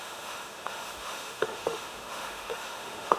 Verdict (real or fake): fake